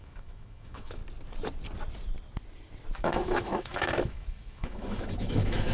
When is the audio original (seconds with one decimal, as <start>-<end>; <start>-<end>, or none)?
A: 1.0-3.0